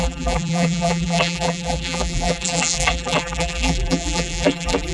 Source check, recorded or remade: remade